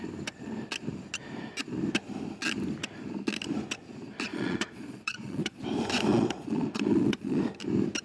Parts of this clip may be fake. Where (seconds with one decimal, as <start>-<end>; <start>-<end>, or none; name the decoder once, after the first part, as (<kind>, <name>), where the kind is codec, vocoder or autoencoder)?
4.3-5.6 (vocoder, Vocos); 6.1-7.4